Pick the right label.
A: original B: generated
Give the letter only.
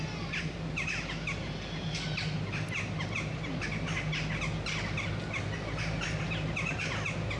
A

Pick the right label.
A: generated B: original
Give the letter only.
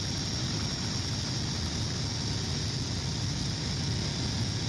B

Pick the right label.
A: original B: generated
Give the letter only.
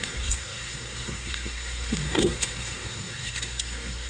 B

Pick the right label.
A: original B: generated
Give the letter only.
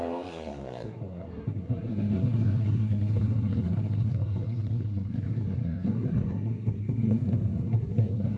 B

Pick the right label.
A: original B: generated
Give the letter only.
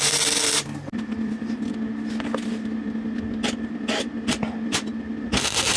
A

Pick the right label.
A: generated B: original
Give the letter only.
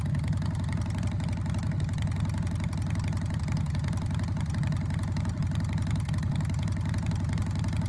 B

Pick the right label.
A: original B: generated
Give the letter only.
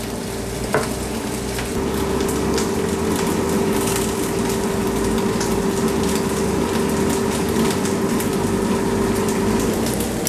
A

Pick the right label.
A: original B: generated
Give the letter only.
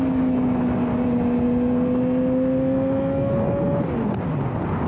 A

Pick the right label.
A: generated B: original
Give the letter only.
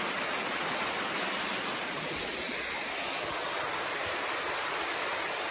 B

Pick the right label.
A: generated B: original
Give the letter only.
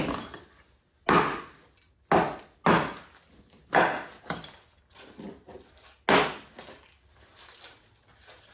B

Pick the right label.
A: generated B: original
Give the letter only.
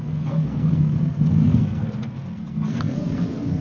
A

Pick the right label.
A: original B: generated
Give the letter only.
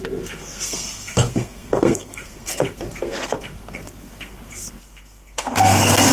B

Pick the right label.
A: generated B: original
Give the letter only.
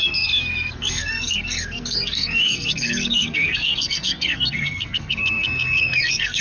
A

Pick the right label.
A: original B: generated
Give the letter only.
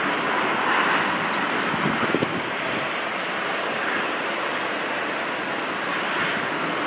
A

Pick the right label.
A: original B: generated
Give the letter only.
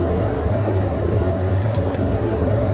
B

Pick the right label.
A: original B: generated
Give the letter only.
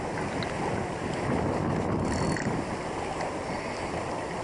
A